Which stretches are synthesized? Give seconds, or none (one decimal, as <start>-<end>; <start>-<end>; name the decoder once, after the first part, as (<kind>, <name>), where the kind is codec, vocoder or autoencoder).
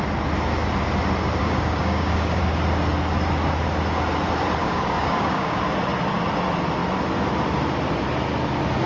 1.4-2.4 (codec, DAC); 4.6-5.6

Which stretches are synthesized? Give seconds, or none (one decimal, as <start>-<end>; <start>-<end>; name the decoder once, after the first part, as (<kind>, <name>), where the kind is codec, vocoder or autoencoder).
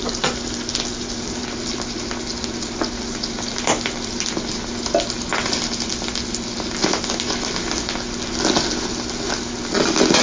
none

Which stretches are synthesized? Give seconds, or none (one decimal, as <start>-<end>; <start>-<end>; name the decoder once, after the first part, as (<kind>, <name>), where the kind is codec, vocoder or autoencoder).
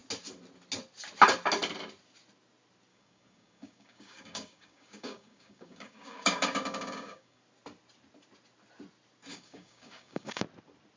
2.9-7.4 (codec, DAC); 9.3-10.4